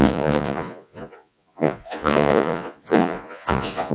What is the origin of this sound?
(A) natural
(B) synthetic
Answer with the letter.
B